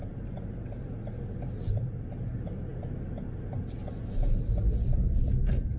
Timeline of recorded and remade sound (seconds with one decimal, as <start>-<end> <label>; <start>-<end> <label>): 0.0-5.8 recorded